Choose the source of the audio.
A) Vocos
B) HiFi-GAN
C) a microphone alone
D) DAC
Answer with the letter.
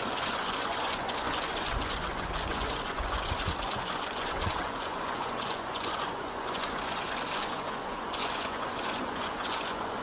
A